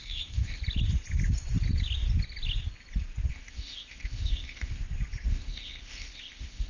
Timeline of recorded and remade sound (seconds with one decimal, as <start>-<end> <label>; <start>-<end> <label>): 0.0-0.6 remade; 0.6-3.3 recorded; 3.3-4.8 remade; 4.8-5.3 recorded; 5.3-6.7 remade